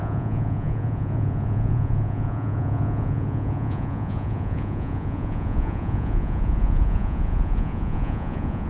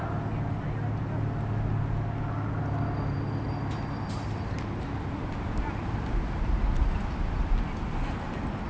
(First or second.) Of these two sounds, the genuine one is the second